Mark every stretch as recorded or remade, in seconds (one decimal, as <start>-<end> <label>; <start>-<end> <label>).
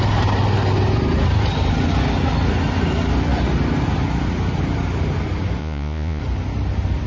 0.0-5.6 recorded; 5.6-6.2 remade; 6.2-7.1 recorded